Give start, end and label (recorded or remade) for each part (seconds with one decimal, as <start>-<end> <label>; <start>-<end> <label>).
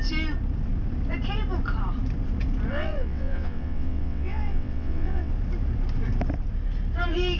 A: 0.0-2.7 recorded; 2.7-5.3 remade; 5.3-7.4 recorded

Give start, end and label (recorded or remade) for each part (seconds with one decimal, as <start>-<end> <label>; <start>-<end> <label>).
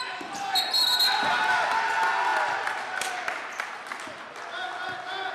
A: 0.0-5.3 recorded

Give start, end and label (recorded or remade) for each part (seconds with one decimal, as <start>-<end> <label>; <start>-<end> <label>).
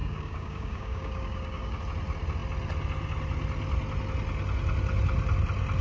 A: 0.0-1.8 remade; 1.8-5.8 recorded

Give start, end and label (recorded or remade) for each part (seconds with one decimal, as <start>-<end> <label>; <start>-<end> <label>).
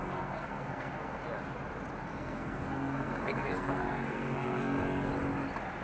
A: 0.0-1.2 remade; 1.2-2.0 recorded; 2.0-5.1 remade; 5.1-5.8 recorded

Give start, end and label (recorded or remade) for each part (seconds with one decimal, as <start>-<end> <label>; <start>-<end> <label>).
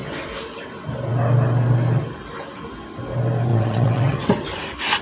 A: 0.0-3.5 recorded; 3.5-4.3 remade; 4.3-5.0 recorded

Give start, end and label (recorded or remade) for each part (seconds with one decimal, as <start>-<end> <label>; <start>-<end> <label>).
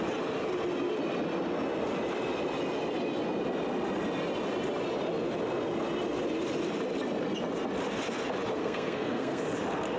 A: 0.0-8.6 recorded; 8.6-9.4 remade; 9.4-10.0 recorded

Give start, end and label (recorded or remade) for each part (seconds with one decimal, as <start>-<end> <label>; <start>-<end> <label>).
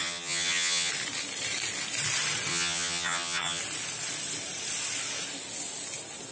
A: 0.0-0.9 remade; 0.9-2.5 recorded; 2.5-3.6 remade; 3.6-6.3 recorded